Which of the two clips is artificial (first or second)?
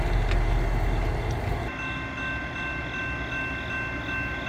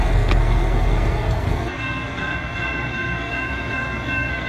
second